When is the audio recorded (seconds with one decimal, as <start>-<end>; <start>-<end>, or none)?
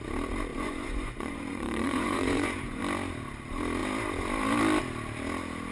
0.0-0.5; 2.8-5.7